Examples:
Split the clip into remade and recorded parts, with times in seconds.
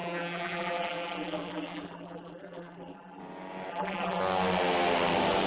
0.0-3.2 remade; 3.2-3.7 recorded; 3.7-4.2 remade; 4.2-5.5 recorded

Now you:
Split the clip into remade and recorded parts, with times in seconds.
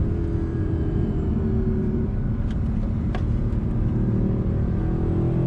0.0-0.5 recorded; 0.5-1.3 remade; 1.3-1.8 recorded; 1.8-4.8 remade; 4.8-5.5 recorded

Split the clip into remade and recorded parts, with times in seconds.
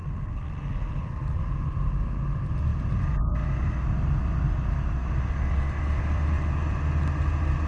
0.0-7.7 recorded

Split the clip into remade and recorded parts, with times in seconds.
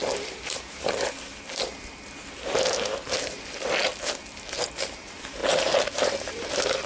0.0-6.9 remade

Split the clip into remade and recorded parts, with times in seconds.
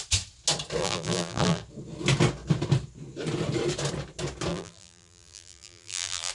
0.0-0.8 recorded; 0.8-1.6 remade; 1.6-4.5 recorded; 4.5-6.3 remade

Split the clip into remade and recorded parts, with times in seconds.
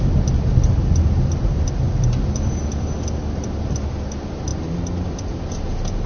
0.0-4.5 recorded; 4.5-5.3 remade; 5.3-6.1 recorded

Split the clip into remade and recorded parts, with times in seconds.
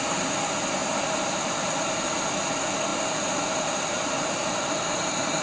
0.0-0.8 recorded; 0.8-1.9 remade; 1.9-2.9 recorded; 2.9-5.4 remade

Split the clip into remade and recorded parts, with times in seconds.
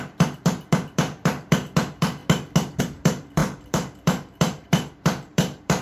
0.0-2.2 remade; 2.2-2.8 recorded; 2.8-5.8 remade